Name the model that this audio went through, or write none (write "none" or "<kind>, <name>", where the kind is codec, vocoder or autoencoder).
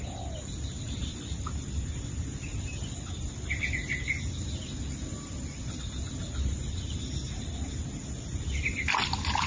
none